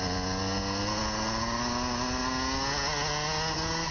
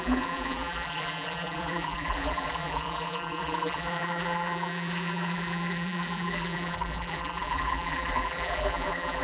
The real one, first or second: first